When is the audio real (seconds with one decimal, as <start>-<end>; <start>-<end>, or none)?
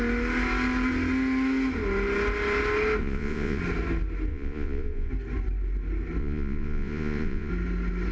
0.0-3.0; 3.6-4.3; 5.1-6.2; 7.5-8.1